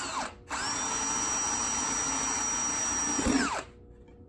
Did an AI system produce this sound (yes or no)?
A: no